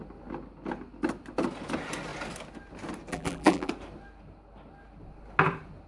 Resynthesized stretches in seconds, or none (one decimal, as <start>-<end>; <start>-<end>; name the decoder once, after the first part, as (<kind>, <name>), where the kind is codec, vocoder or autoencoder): 3.1-3.7 (vocoder, BigVGAN v2)